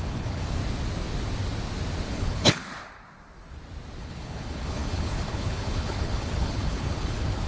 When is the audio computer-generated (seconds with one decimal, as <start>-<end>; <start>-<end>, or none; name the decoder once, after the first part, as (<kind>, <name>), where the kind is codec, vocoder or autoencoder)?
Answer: 0.0-0.6 (codec, HILCodec); 2.1-2.6; 4.0-7.5